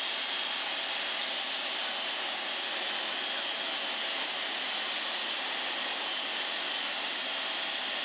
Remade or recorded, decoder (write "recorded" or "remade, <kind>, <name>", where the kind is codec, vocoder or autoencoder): recorded